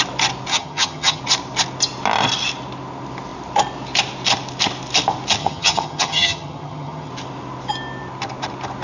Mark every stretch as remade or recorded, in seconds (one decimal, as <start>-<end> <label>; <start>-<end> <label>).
0.0-0.5 recorded; 0.5-1.2 remade; 1.2-5.4 recorded; 5.4-7.1 remade; 7.1-8.8 recorded